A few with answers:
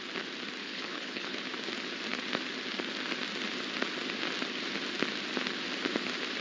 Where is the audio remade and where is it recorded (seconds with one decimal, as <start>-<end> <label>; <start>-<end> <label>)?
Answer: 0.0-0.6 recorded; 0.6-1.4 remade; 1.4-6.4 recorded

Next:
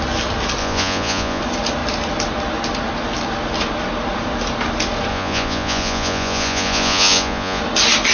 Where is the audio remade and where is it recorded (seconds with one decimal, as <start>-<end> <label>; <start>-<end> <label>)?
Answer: 0.0-0.6 recorded; 0.6-1.4 remade; 1.4-5.1 recorded; 5.1-7.6 remade; 7.6-8.1 recorded

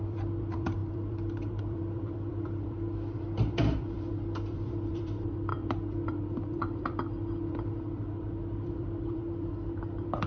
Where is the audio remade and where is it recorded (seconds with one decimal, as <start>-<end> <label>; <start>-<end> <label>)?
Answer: 0.0-10.3 remade

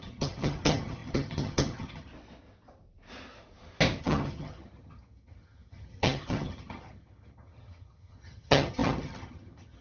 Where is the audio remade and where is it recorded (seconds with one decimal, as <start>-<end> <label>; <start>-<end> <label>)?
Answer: 0.0-2.1 remade; 2.1-4.0 recorded; 4.0-9.8 remade